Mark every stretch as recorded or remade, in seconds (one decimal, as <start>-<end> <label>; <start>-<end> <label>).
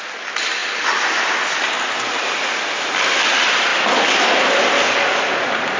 0.0-5.8 recorded